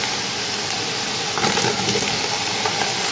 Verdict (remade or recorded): recorded